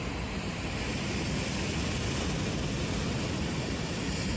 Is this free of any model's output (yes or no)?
yes